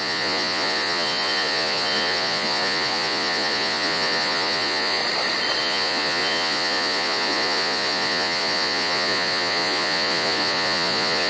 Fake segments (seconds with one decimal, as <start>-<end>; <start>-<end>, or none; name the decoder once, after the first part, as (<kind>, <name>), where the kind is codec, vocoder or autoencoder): 0.0-5.0 (vocoder, Vocos); 5.6-11.3